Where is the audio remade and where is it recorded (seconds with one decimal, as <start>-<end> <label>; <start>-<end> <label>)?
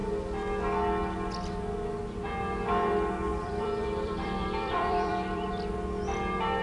0.0-3.3 recorded; 3.3-5.5 remade; 5.5-6.6 recorded